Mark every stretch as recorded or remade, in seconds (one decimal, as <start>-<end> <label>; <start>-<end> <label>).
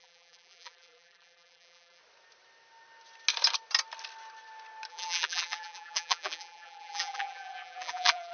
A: 0.0-2.0 remade; 2.0-4.9 recorded; 4.9-8.3 remade